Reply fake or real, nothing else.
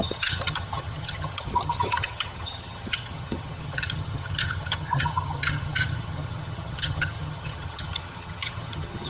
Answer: fake